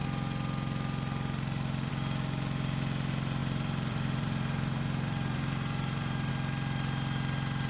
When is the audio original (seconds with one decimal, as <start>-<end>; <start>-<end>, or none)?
0.0-3.4; 6.3-7.7